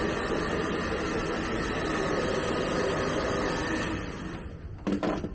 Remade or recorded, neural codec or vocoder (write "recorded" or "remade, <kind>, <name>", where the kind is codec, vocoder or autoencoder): recorded